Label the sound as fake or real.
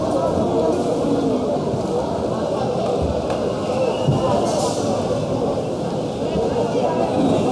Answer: real